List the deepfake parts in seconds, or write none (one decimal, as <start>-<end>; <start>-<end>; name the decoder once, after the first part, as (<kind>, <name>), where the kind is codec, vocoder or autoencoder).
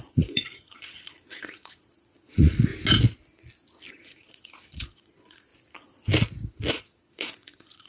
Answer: 0.0-2.7 (vocoder, Vocos); 3.9-5.5; 6.7-7.9